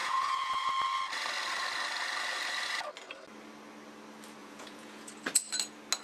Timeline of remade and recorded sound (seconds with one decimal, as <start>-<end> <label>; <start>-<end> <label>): 0.0-0.7 remade; 0.7-4.4 recorded; 4.4-5.0 remade; 5.0-6.0 recorded